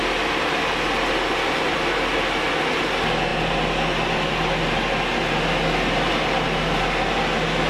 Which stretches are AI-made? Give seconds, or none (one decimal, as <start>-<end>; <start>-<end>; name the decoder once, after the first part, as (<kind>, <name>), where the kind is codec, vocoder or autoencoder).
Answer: none